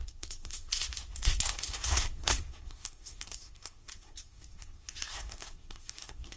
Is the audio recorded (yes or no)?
no